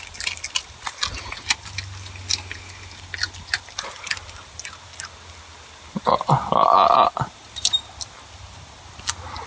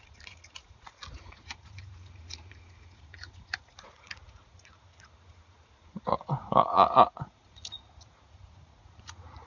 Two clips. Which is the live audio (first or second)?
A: first